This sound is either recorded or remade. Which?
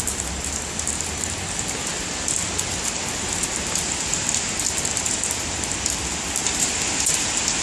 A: recorded